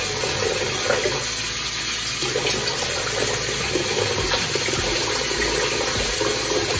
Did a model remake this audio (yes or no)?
no